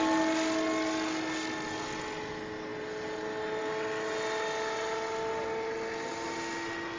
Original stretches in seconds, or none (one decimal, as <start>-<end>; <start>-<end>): 0.0-7.0